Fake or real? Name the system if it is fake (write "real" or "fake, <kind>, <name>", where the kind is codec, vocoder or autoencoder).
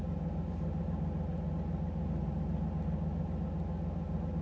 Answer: real